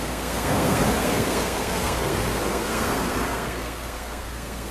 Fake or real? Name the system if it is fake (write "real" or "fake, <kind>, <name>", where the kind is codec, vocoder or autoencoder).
fake, codec, SNAC